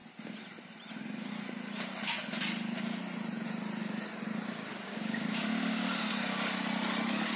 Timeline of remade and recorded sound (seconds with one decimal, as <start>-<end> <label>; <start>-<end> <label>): 0.0-4.7 recorded; 4.7-6.1 remade; 6.1-7.4 recorded